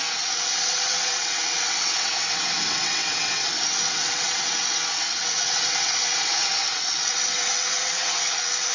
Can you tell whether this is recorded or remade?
remade